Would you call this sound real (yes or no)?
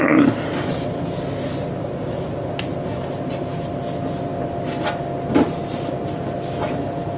yes